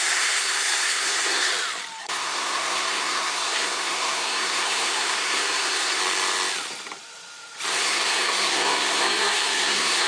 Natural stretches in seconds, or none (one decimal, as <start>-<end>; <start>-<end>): 1.5-2.0; 6.0-7.7